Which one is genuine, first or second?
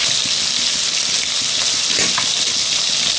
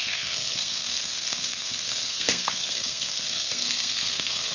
first